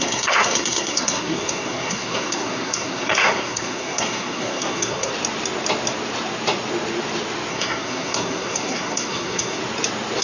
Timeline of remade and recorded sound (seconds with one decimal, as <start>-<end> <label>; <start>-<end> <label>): 0.0-5.1 remade; 5.1-7.5 recorded; 7.5-9.6 remade; 9.6-10.2 recorded